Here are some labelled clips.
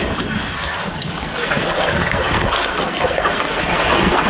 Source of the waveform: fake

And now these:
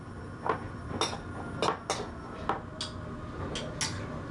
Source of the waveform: real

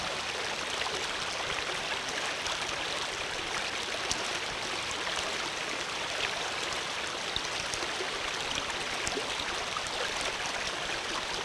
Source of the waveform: real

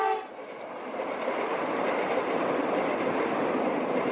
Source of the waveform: real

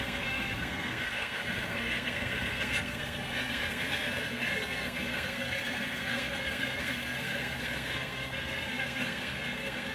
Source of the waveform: fake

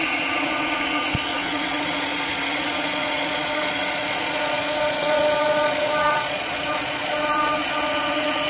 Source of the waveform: fake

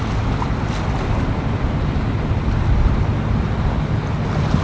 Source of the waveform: real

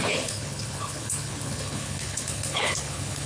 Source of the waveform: fake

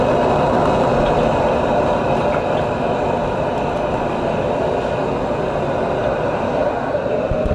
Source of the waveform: real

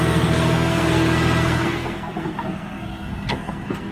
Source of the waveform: fake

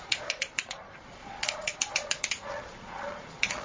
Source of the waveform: fake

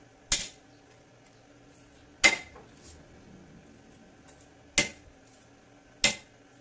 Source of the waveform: real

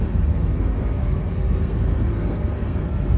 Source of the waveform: fake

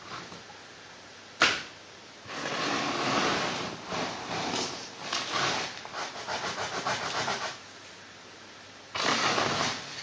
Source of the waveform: real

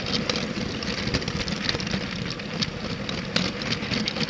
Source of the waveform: real